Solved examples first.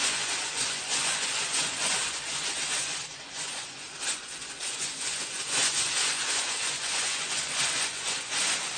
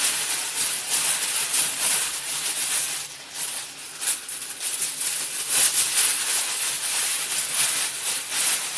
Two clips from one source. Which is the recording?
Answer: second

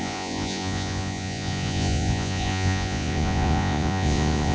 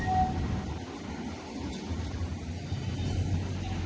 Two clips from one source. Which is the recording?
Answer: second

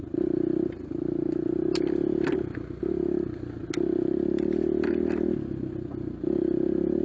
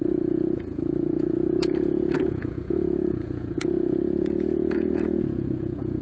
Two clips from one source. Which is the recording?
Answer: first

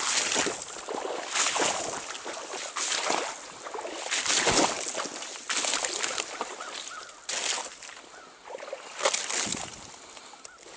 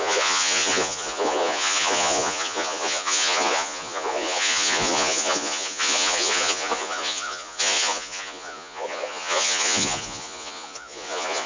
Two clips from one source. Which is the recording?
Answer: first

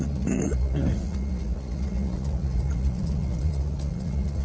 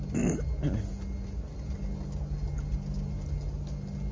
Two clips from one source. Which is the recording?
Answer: second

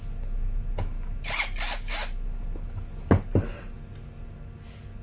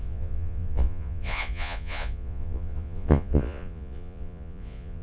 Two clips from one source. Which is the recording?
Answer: first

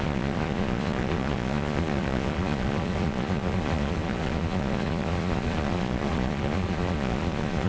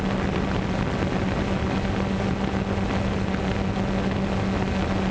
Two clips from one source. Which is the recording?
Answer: second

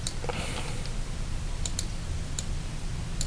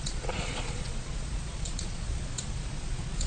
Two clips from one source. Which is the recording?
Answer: first